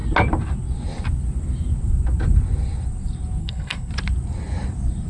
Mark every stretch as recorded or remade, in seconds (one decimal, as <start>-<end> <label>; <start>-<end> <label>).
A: 0.0-3.4 recorded; 3.4-3.9 remade; 3.9-5.1 recorded